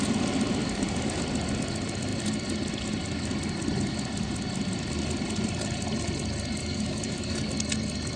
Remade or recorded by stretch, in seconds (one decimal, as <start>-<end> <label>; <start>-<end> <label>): 0.0-0.6 recorded; 0.6-1.2 remade; 1.2-6.6 recorded; 6.6-7.5 remade; 7.5-8.2 recorded

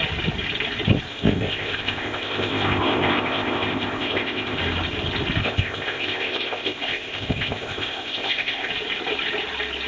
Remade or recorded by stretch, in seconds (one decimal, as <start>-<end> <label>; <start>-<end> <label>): 0.0-1.1 recorded; 1.1-4.6 remade; 4.6-5.4 recorded; 5.4-8.7 remade; 8.7-9.9 recorded

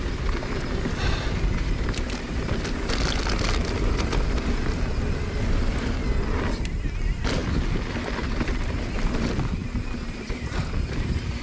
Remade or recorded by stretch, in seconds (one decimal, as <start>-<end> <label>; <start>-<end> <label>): 0.0-11.4 recorded

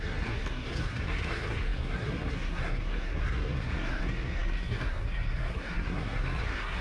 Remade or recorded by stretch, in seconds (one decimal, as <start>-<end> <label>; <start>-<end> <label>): 0.0-6.8 remade

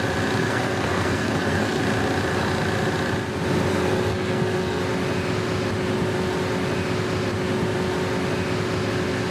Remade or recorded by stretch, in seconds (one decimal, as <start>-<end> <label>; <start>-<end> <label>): 0.0-0.4 recorded; 0.4-1.8 remade; 1.8-3.7 recorded; 3.7-4.8 remade; 4.8-9.3 recorded